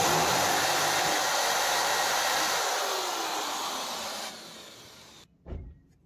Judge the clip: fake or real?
real